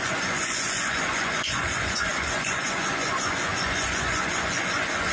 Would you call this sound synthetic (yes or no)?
yes